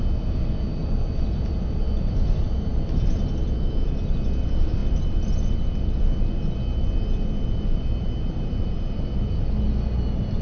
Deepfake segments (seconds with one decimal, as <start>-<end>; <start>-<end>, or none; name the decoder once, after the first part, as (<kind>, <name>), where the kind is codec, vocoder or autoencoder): none